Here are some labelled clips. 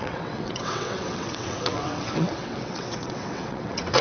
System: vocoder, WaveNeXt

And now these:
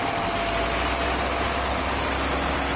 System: none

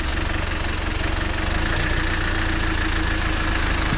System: none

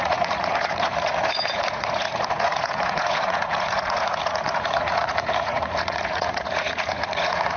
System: vocoder, Vocos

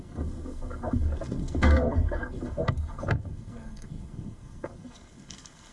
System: codec, SNAC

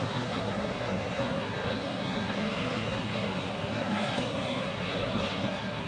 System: codec, SNAC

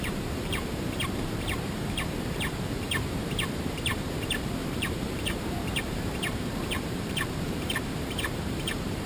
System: vocoder, BigVGAN v2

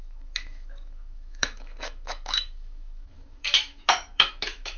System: autoencoder, DAC-VAE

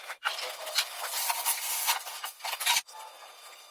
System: none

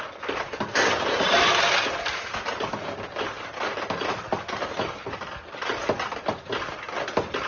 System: none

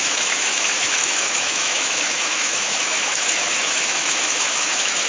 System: autoencoder, DAC-VAE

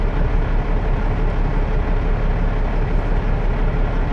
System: none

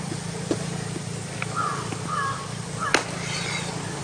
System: none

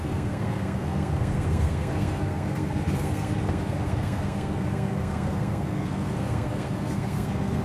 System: codec, SNAC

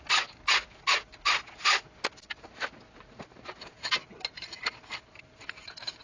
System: none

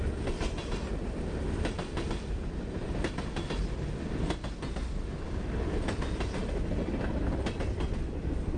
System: none